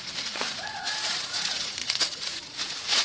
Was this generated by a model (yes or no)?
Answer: yes